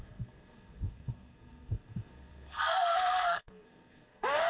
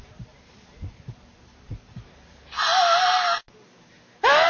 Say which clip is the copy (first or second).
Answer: first